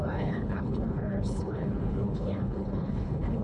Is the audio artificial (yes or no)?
yes